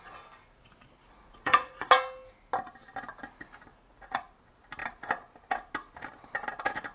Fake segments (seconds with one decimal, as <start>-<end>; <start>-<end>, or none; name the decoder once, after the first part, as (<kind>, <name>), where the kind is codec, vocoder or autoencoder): 1.0-1.9 (vocoder, Vocos); 3.7-4.2